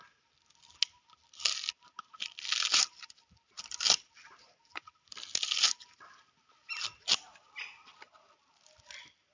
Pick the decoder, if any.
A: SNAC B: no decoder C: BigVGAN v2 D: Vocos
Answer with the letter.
B